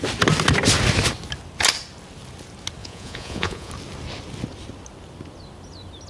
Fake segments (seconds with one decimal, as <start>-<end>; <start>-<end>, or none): 2.8-3.7